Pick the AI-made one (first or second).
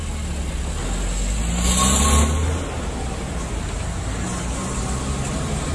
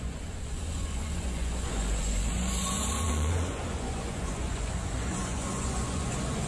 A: second